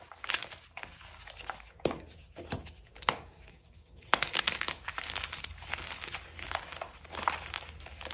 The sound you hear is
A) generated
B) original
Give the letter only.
A